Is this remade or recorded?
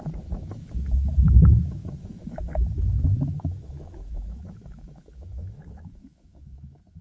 remade